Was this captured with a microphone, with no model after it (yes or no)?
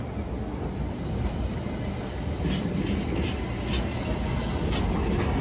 yes